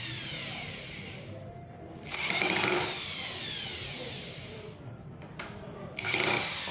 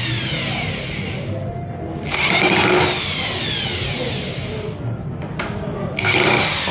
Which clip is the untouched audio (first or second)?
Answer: second